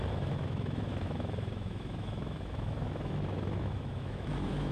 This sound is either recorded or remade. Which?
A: remade